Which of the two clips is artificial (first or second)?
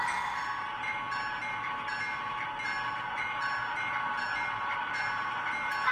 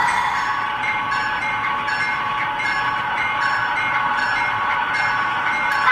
second